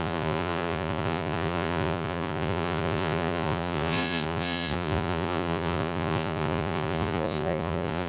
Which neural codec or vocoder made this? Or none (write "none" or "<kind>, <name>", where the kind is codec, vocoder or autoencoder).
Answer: vocoder, Vocos